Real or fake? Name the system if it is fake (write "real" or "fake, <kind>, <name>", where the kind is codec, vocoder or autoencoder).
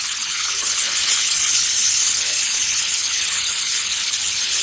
fake, codec, HILCodec